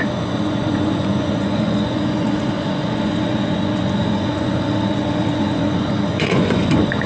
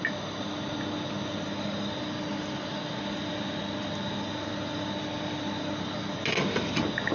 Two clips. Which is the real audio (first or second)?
second